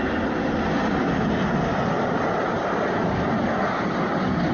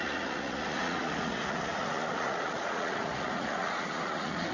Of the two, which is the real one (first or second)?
first